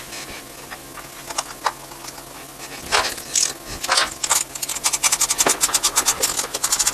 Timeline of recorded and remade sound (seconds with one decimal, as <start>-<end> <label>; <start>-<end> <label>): 0.0-6.9 recorded